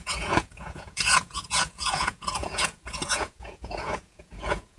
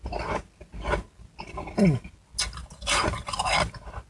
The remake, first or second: first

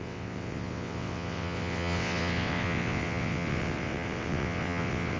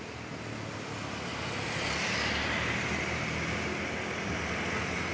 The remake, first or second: first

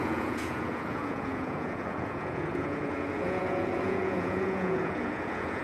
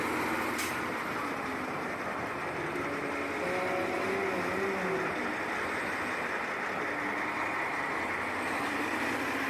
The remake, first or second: first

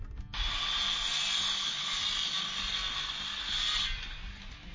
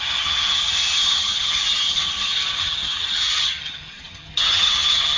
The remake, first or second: second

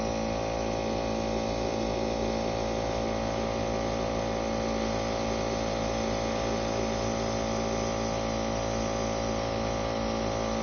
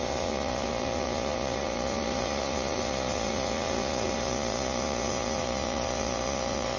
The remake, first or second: second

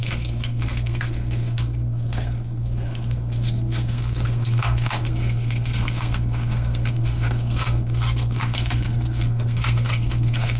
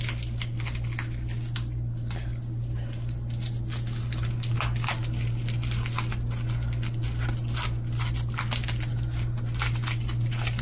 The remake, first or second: first